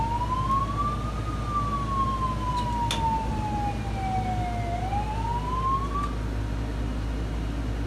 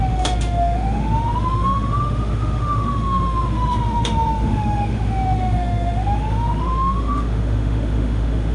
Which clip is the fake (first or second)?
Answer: second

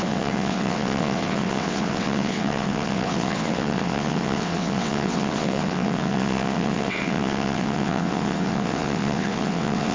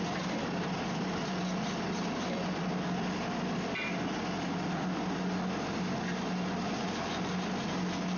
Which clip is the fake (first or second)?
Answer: first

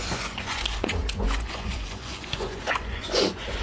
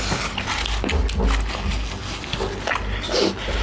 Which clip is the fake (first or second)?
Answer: first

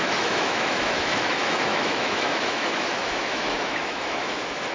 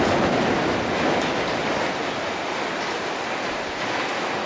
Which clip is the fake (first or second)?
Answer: first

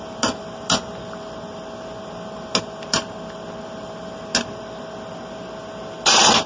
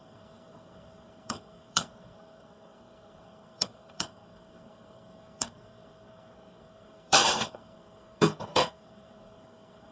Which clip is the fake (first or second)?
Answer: second